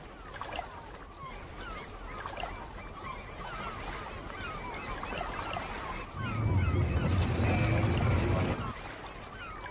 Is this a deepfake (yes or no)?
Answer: no